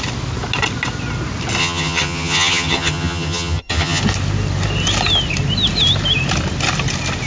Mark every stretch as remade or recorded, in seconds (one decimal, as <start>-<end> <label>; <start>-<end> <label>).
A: 0.0-1.6 recorded; 1.6-4.0 remade; 4.0-7.3 recorded